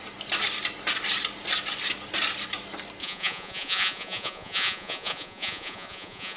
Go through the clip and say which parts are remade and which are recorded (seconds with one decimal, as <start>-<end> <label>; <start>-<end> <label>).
0.0-3.0 recorded; 3.0-6.4 remade